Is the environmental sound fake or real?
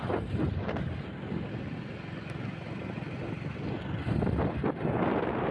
real